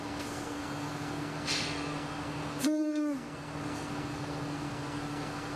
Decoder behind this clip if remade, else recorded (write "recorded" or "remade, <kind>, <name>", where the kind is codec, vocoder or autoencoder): remade, codec, SNAC